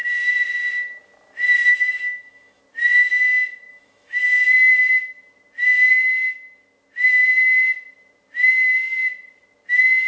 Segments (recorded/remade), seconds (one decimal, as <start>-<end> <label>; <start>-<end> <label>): 0.0-1.7 recorded; 1.7-2.6 remade; 2.6-3.7 recorded; 3.7-4.7 remade; 4.7-9.7 recorded; 9.7-10.1 remade